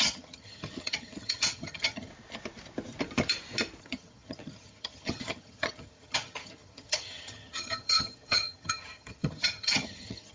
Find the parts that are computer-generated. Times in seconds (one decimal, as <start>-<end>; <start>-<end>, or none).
0.0-2.1; 3.8-10.3